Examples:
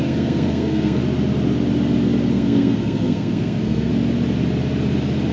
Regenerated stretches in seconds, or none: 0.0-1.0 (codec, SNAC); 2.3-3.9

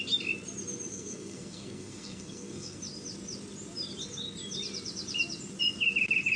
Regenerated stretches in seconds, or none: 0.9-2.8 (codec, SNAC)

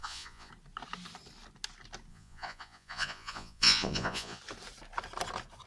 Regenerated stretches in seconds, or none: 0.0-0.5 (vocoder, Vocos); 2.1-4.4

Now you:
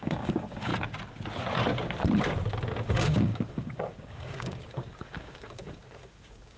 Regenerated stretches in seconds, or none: 0.0-0.7 (codec, DAC); 2.9-6.6